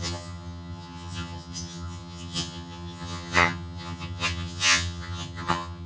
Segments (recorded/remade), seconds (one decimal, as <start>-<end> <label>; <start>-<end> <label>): 0.0-5.9 remade